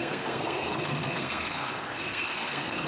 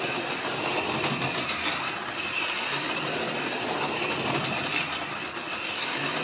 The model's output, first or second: first